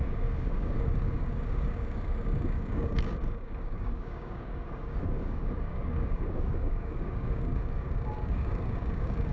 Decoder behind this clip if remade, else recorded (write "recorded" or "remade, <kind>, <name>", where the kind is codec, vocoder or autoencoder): remade, codec, DAC